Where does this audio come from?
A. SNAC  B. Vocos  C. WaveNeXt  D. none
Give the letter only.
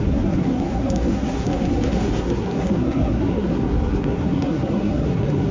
A